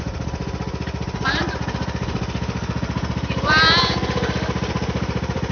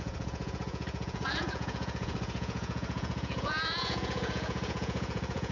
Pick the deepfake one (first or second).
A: second